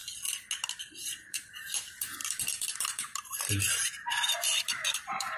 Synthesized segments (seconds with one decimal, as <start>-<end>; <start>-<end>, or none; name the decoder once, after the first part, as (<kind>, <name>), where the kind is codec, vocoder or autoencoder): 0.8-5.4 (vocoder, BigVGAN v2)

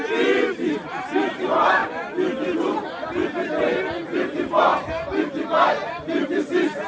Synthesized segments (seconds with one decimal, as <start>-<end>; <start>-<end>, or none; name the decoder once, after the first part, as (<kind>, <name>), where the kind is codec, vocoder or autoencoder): 0.0-1.8 (vocoder, BigVGAN v2); 2.6-3.0; 3.8-4.7; 5.9-6.9

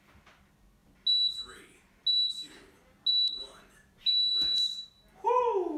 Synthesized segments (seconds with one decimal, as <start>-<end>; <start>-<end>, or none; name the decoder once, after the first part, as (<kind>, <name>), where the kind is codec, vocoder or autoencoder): none

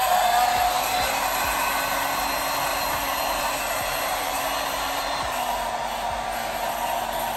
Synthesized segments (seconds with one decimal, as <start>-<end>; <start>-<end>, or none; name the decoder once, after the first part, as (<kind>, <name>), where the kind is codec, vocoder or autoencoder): 2.7-5.1 (vocoder, BigVGAN v2)

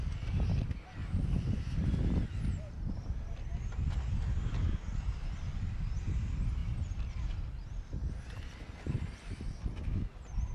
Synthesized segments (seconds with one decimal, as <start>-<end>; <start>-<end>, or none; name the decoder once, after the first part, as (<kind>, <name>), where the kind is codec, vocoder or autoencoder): 1.0-2.1 (vocoder, BigVGAN v2)

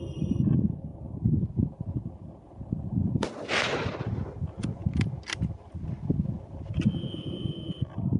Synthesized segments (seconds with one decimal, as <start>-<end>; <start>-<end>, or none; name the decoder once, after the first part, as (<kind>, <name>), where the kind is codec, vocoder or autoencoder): 0.0-0.9 (vocoder, BigVGAN v2); 2.5-8.2